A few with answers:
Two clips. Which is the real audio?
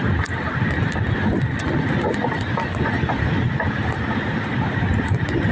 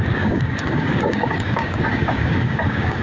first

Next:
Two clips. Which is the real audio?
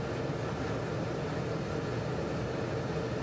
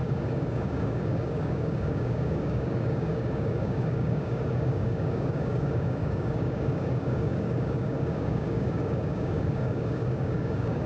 first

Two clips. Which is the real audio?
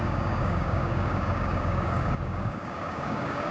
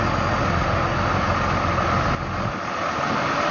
second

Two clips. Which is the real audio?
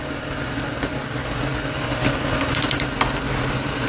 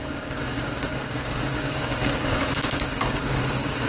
first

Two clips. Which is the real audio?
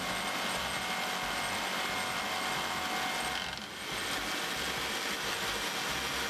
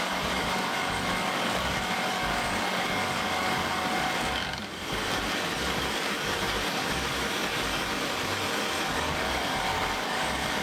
first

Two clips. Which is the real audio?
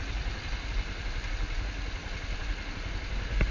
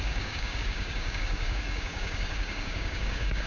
first